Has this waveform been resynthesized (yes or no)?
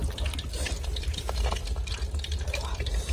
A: no